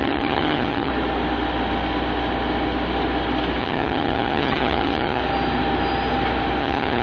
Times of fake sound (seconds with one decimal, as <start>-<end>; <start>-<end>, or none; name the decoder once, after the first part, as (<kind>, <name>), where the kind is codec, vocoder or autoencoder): 0.0-0.9 (vocoder, HiFi-GAN); 3.6-5.2; 6.6-7.0